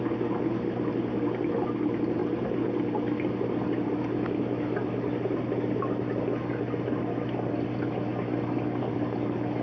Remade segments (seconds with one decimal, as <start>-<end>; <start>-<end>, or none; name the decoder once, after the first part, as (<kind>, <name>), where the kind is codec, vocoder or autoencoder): none